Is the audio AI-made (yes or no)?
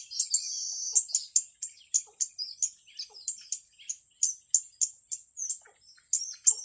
no